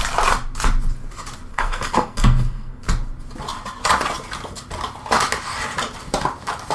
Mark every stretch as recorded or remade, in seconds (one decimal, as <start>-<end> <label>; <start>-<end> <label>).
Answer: 0.0-1.5 recorded; 1.5-2.8 remade; 2.8-6.7 recorded